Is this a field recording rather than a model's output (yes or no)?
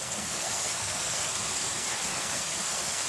no